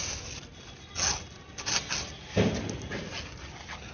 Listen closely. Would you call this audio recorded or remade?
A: recorded